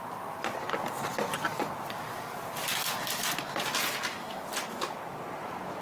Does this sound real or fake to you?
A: real